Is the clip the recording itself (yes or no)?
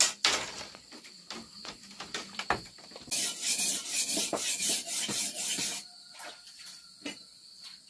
yes